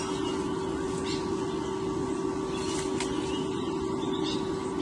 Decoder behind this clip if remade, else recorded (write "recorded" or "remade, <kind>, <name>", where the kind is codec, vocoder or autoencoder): recorded